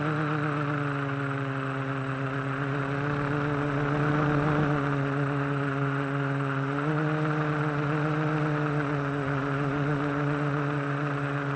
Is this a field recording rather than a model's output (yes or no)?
yes